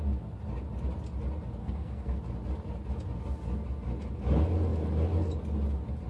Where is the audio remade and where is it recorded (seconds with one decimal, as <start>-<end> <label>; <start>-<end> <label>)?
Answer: 0.0-1.6 recorded; 1.6-2.2 remade; 2.2-6.1 recorded